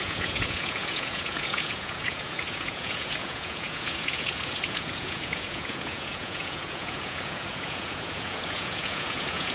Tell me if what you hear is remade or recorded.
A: remade